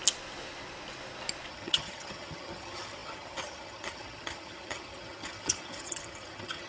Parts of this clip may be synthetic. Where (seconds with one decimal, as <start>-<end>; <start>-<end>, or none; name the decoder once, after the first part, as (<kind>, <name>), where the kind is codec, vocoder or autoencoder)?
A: 1.5-6.7 (vocoder, HiFi-GAN)